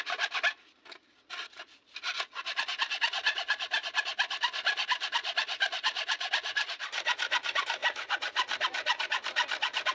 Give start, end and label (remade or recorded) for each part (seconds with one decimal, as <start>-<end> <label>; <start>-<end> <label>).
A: 0.0-9.9 recorded